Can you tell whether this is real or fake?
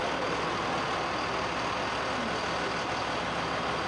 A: real